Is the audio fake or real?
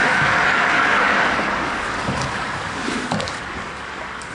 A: fake